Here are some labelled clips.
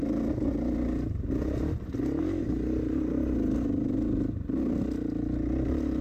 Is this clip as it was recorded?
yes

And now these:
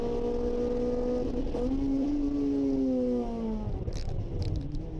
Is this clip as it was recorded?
yes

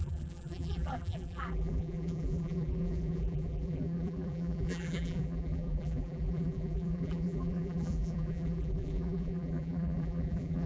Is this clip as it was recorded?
no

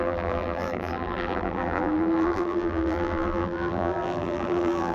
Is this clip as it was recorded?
no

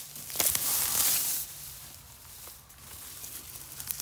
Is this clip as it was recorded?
yes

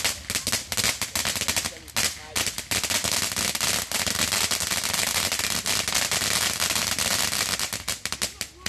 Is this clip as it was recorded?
yes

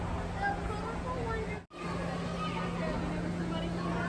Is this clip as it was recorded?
yes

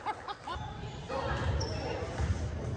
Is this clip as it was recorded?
no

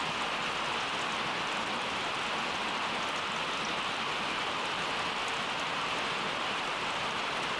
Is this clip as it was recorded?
yes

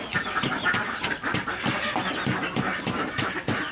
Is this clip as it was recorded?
yes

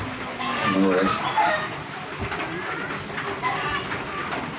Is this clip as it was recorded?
yes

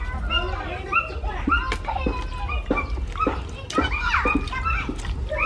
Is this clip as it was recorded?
yes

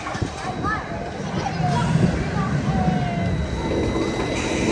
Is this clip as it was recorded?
yes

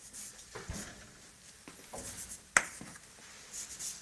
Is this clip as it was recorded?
yes